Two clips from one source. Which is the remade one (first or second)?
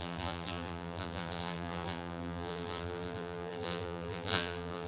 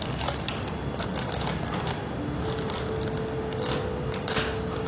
first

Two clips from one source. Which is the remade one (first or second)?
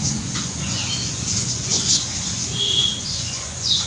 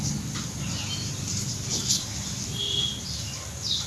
first